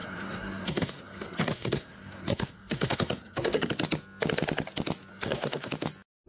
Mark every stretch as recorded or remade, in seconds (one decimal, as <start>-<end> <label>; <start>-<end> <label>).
0.0-3.7 remade; 3.7-5.1 recorded; 5.1-5.7 remade; 5.7-6.3 recorded